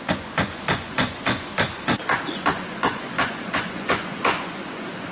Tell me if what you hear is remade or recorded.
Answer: remade